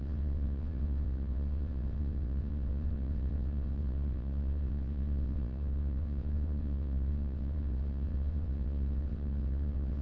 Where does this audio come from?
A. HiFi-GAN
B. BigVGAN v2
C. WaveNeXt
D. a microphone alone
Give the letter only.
C